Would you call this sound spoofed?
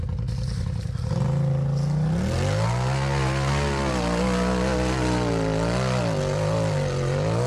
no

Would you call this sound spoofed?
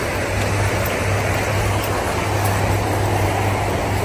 no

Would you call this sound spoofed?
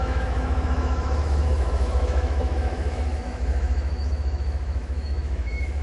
yes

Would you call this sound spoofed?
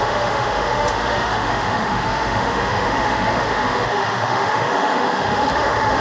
yes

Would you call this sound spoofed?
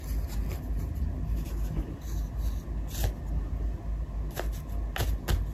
no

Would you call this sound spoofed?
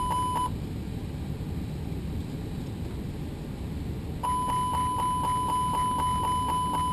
no